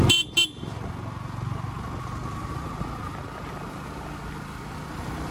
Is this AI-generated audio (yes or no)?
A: no